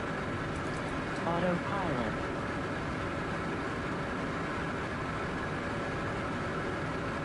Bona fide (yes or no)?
no